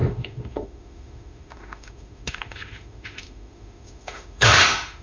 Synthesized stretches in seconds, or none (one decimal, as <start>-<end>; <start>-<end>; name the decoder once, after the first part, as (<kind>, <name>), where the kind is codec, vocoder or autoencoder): 0.0-5.0 (autoencoder, DAC-VAE)